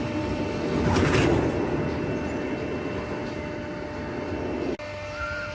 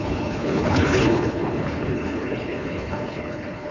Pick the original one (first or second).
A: first